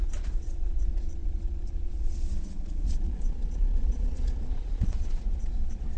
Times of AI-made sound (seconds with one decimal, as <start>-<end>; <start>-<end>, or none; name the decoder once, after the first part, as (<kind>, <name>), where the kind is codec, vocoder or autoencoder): 0.0-6.0 (vocoder, Vocos)